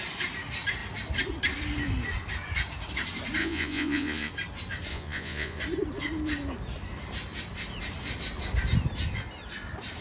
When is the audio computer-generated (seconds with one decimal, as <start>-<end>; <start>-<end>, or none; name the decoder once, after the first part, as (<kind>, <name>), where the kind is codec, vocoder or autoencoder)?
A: 3.4-4.3 (vocoder, Vocos); 4.9-5.6